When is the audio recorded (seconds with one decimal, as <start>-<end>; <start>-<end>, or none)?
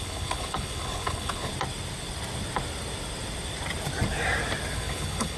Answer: 1.5-4.7